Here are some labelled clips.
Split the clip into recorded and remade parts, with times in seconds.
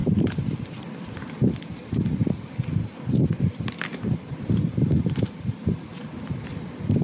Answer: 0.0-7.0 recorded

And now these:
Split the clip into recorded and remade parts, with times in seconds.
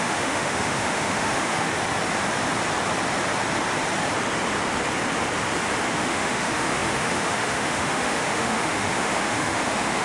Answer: 0.0-1.7 remade; 1.7-5.9 recorded; 5.9-10.0 remade